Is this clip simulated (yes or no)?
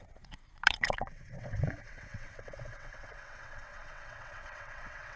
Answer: yes